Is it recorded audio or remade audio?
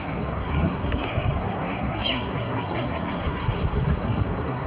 remade